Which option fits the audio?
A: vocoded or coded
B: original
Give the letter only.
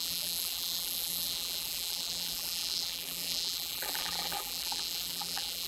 A